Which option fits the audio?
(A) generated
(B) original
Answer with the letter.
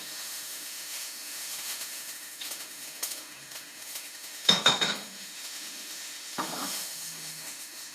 A